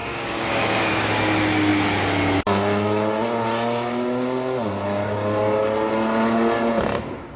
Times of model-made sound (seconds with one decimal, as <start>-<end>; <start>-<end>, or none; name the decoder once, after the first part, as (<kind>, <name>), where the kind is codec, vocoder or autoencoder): 0.0-0.9 (codec, DAC)